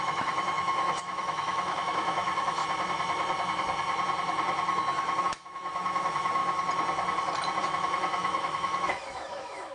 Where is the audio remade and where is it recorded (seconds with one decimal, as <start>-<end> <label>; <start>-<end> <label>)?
0.0-2.6 remade; 2.6-5.2 recorded; 5.2-6.4 remade; 6.4-7.6 recorded; 7.6-9.7 remade